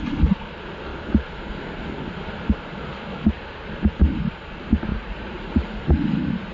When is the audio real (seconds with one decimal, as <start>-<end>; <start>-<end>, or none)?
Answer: 0.0-4.9; 5.8-6.5